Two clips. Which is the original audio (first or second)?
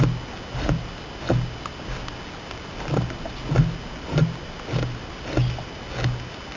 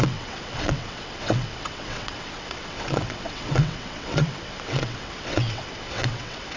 first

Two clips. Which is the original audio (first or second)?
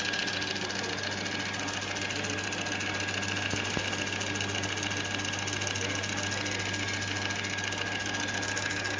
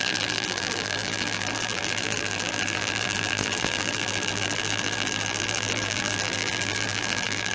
first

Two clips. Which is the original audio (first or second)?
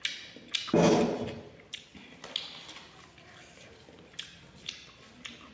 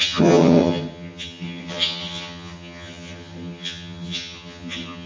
first